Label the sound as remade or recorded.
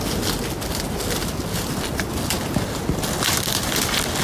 recorded